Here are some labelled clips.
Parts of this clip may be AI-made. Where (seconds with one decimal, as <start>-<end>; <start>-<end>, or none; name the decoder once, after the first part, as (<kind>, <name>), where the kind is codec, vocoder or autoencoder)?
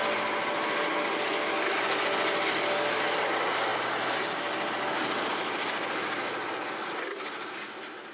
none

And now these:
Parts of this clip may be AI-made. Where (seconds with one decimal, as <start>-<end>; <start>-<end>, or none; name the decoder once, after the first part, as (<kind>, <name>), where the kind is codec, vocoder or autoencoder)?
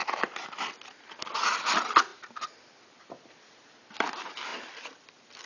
1.2-5.5 (vocoder, BigVGAN v2)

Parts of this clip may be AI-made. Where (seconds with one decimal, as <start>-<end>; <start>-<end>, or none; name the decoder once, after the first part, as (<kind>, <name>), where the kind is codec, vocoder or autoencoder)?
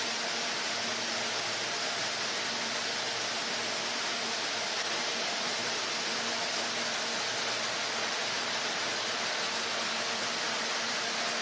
4.8-5.8 (vocoder, BigVGAN v2); 8.0-8.5